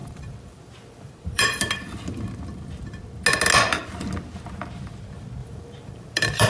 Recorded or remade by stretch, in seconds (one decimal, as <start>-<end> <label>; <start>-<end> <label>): 0.0-1.6 remade; 1.6-5.4 recorded; 5.4-6.5 remade